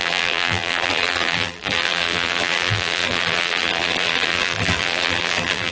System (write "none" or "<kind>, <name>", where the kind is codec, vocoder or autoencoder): vocoder, BigVGAN v2